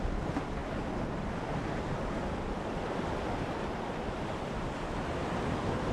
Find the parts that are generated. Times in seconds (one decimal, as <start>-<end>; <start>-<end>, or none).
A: none